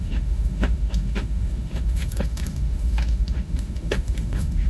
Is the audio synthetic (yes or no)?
yes